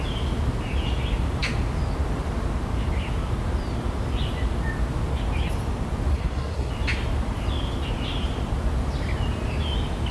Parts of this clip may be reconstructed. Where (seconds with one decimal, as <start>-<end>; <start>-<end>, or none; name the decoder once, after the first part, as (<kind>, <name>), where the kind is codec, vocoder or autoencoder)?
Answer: 6.1-6.7 (codec, SNAC)